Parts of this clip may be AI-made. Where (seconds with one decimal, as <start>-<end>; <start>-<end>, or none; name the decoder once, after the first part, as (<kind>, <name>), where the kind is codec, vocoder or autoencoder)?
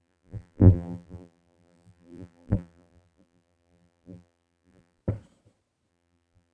0.0-5.0 (vocoder, BigVGAN v2); 5.9-6.5